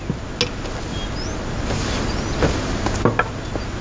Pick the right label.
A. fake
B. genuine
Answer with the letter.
B